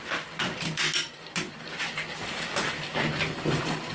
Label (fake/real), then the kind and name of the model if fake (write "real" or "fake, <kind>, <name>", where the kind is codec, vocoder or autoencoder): real